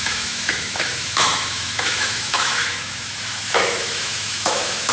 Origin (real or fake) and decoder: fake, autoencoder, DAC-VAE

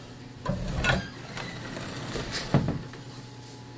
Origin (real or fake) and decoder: real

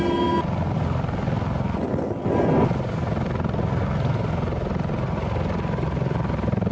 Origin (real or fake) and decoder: real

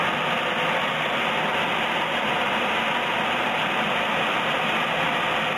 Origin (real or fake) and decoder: real